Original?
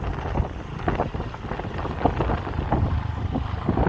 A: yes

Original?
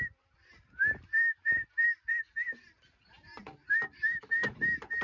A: no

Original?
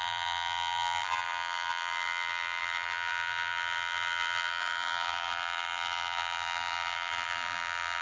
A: no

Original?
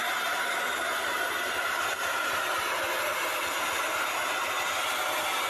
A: yes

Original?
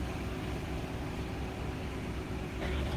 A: yes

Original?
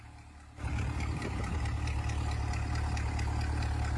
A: yes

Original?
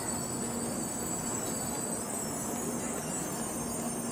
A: yes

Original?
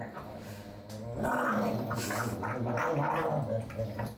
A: yes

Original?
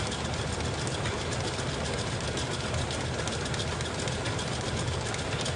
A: yes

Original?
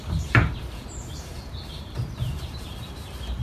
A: no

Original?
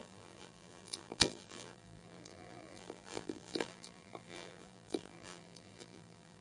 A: no